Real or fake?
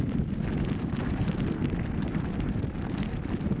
real